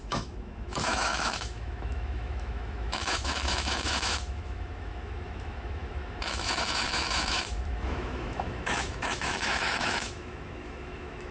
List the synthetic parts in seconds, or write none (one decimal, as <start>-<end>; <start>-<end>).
0.0-11.3